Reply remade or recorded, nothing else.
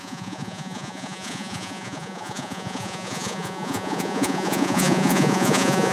remade